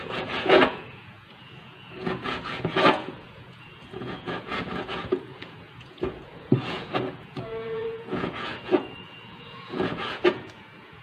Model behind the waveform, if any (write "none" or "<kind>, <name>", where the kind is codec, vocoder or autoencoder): vocoder, Vocos